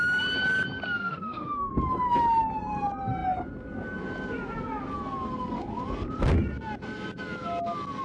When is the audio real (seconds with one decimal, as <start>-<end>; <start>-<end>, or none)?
0.0-1.0; 1.7-8.0